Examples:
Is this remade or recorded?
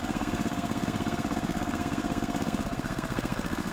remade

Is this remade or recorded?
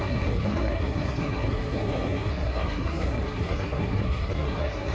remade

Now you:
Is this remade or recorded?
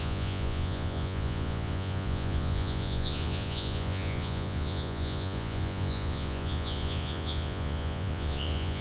remade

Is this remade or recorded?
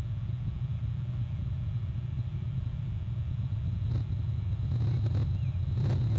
recorded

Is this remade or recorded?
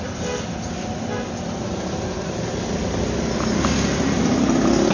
recorded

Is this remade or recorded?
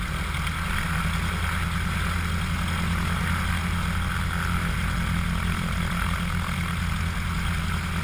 recorded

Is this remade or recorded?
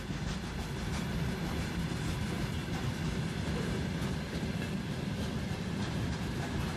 recorded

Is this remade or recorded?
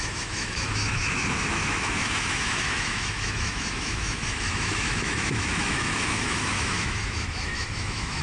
remade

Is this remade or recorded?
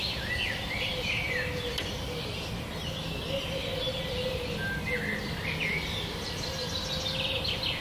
recorded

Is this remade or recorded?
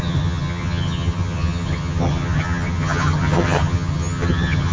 remade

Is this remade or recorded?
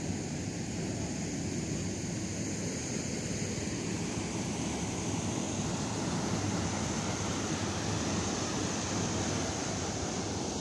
recorded